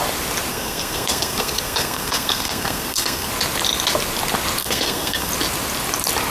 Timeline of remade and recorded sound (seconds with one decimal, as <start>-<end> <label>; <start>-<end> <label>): 0.0-0.5 recorded; 0.5-3.3 remade; 3.3-4.6 recorded; 4.6-5.3 remade; 5.3-6.3 recorded